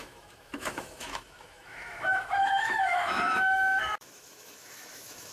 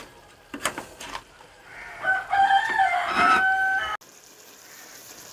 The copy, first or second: first